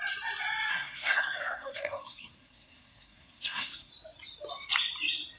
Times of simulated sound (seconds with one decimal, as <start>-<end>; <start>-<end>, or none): 0.7-3.9